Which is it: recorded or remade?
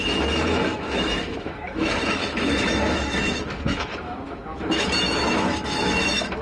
remade